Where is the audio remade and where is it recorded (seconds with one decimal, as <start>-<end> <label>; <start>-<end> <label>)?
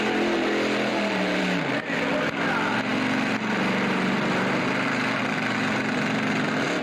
0.0-6.8 recorded